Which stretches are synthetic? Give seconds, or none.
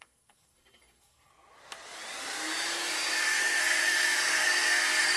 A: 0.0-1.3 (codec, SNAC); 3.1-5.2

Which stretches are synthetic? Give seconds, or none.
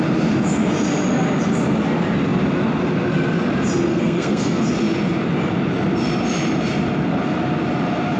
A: 3.9-4.6 (codec, SNAC)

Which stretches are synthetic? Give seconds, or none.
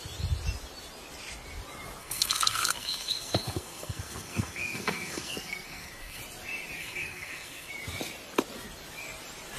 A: 2.0-6.2 (codec, SNAC); 6.8-7.7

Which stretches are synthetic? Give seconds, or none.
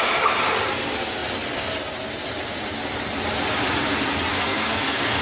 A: 4.3-5.2 (codec, SNAC)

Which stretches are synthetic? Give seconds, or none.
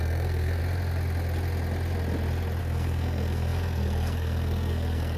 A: 0.0-0.6 (codec, SNAC); 2.6-5.2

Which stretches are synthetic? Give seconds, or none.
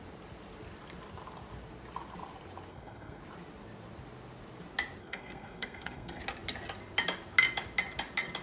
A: 2.7-3.2 (codec, SNAC); 5.0-6.2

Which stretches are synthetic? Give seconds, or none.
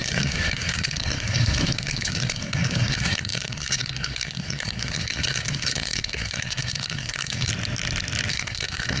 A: 0.0-7.5 (codec, SNAC); 8.3-9.0